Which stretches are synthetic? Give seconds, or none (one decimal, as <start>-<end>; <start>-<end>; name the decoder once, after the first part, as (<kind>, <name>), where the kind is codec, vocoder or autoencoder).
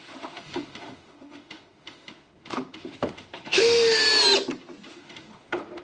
0.0-4.0 (autoencoder, DAC-VAE); 4.9-5.8